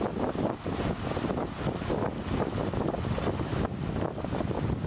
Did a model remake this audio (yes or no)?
no